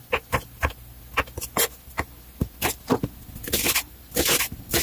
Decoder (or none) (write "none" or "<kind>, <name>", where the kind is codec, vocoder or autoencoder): none